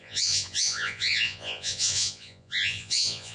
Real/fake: fake